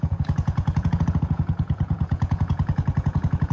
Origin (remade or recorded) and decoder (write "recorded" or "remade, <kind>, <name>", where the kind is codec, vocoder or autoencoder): remade, vocoder, Vocos